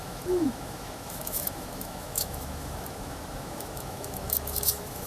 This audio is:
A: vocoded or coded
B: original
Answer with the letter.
A